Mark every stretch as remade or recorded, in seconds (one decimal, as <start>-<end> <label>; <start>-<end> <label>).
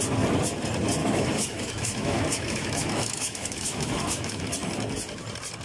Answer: 0.0-1.0 recorded; 1.0-4.4 remade; 4.4-5.6 recorded